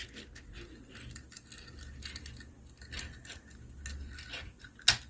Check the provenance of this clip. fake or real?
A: real